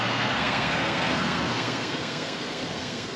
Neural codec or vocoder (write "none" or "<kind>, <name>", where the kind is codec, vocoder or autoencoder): codec, SNAC